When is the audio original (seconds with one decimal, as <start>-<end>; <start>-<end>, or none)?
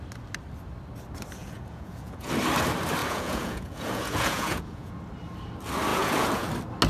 0.0-1.4; 2.3-3.0; 5.0-5.9; 6.5-6.9